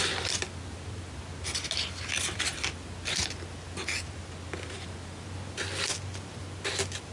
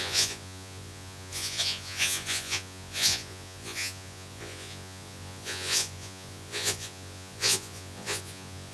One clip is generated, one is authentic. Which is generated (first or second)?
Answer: second